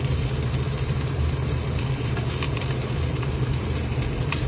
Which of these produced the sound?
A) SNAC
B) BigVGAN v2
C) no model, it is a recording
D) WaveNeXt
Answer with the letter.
B